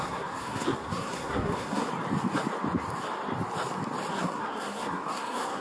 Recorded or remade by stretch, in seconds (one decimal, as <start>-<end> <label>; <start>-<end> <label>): 0.0-1.9 remade; 1.9-4.1 recorded; 4.1-5.6 remade